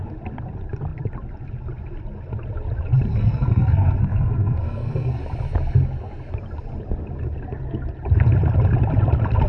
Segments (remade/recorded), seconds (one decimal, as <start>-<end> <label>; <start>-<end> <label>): 0.0-3.1 recorded; 3.1-5.2 remade; 5.2-9.5 recorded